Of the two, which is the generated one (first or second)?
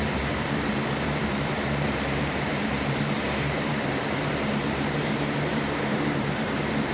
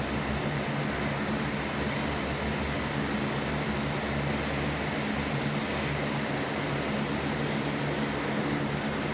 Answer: first